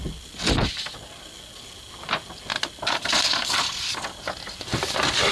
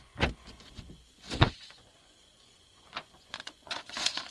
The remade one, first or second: second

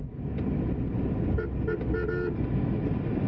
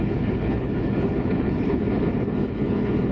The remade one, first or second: second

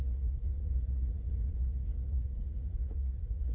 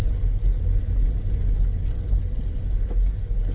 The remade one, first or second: first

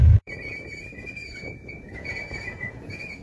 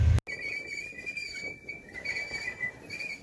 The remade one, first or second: first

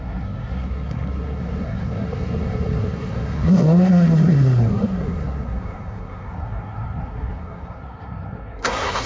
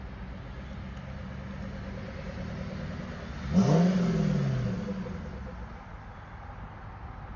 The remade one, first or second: first